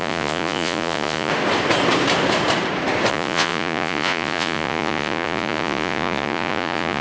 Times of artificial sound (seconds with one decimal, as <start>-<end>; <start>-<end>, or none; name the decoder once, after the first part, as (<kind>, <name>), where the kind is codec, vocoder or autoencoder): 0.0-1.3 (vocoder, Vocos); 3.1-7.0